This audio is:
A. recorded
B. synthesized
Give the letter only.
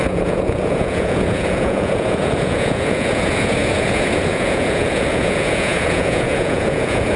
B